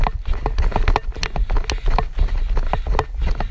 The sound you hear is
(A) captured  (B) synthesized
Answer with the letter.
A